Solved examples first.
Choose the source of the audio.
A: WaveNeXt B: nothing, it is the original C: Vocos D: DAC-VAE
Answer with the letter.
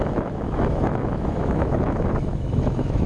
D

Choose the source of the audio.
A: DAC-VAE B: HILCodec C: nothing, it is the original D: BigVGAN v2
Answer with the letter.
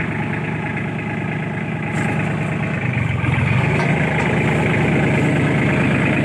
C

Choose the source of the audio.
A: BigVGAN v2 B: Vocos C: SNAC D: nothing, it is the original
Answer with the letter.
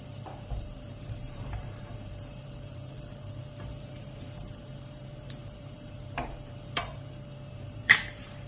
A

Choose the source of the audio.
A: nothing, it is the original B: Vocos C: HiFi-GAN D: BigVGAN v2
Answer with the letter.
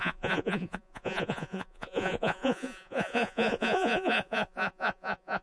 B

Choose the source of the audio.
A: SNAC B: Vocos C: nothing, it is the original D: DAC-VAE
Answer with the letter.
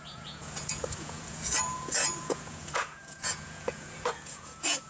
B